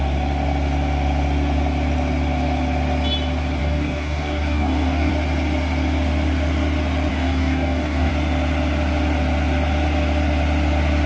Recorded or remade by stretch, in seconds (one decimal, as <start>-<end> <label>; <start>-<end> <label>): 0.0-3.6 recorded; 3.6-5.1 remade; 5.1-7.1 recorded; 7.1-8.1 remade; 8.1-11.1 recorded